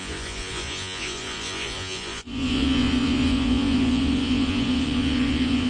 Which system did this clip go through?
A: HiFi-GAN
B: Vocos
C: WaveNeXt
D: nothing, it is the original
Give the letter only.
B